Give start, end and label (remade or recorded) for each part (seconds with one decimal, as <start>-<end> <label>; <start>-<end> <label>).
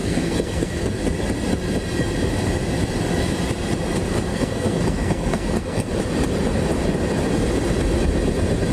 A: 0.0-1.0 remade; 1.0-4.3 recorded; 4.3-5.9 remade; 5.9-8.7 recorded